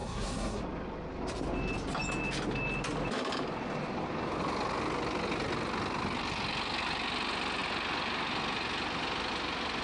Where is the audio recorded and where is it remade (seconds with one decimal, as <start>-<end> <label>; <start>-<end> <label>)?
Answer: 0.0-0.6 remade; 0.6-9.8 recorded